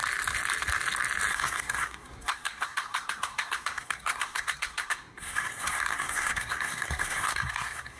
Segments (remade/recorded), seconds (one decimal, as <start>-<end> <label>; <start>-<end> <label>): 0.0-1.3 recorded; 1.3-8.0 remade